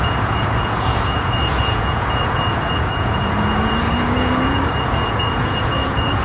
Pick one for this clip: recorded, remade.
remade